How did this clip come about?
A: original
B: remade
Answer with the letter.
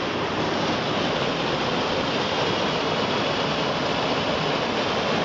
A